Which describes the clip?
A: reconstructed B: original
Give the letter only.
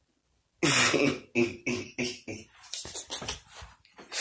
B